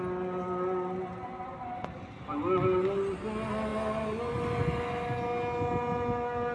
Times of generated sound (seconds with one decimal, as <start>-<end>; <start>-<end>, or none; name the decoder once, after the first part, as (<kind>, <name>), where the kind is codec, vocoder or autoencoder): none